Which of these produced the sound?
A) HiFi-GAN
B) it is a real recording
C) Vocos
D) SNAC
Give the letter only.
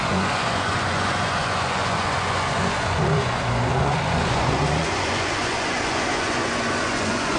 C